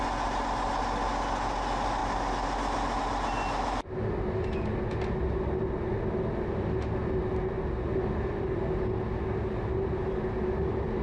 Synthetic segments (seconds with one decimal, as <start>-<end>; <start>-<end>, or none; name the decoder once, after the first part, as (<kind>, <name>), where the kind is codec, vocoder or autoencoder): none